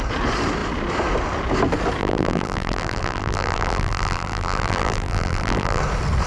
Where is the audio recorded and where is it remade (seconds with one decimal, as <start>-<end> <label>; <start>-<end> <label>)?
0.0-2.0 recorded; 2.0-5.8 remade; 5.8-6.3 recorded